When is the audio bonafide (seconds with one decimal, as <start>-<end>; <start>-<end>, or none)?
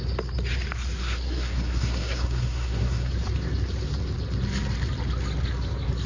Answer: 0.0-1.0; 3.1-6.1